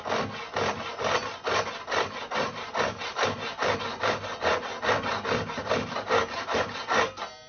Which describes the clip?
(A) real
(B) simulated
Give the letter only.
A